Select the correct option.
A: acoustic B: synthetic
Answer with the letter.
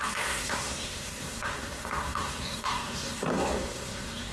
B